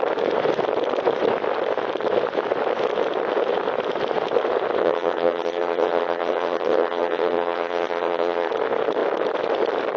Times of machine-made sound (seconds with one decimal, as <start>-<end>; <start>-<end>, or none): 4.8-8.5